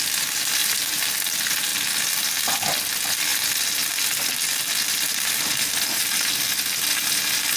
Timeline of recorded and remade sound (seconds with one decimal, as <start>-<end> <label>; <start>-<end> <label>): 0.0-0.6 recorded; 0.6-1.1 remade; 1.1-7.6 recorded